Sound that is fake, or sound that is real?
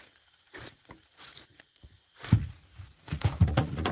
fake